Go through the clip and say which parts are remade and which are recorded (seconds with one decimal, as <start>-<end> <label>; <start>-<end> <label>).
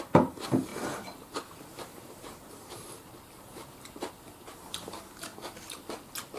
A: 0.0-5.3 remade; 5.3-6.4 recorded